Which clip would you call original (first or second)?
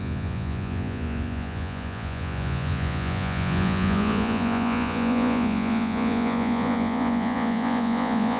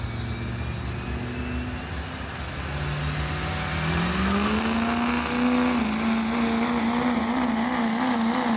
second